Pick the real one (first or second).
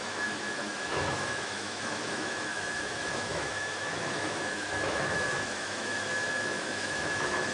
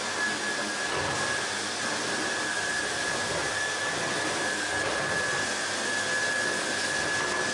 second